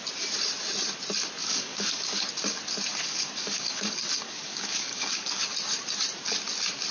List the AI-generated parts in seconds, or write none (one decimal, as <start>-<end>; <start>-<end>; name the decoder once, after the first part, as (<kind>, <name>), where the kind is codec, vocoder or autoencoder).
1.4-2.2 (codec, DAC); 2.9-5.4